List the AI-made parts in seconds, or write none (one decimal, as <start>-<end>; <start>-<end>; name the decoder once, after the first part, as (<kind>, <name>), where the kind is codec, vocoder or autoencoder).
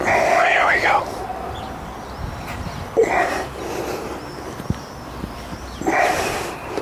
5.5-6.8 (vocoder, BigVGAN v2)